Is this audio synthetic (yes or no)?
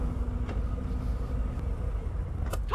no